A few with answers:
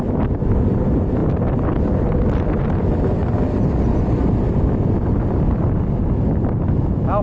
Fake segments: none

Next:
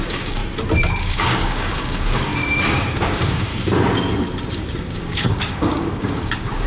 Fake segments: 0.0-0.4 (codec, DAC); 1.0-3.5; 4.6-6.7

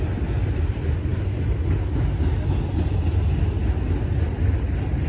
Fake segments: none

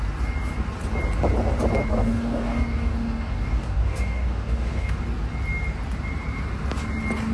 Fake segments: 1.9-5.0 (codec, DAC)

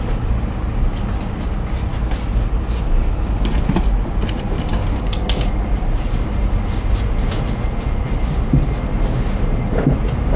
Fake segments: 4.7-5.4 (codec, DAC)

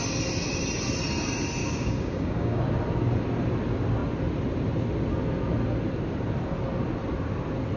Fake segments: 1.6-2.6 (codec, DAC)

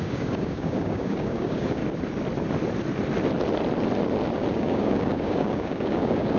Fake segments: 0.0-1.8 (codec, DAC); 4.5-6.4